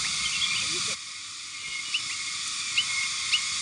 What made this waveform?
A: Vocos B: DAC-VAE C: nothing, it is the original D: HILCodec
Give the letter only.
C